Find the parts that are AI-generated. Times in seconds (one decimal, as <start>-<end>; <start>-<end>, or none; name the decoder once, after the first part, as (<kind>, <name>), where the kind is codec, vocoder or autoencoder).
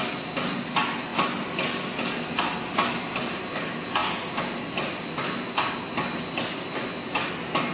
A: none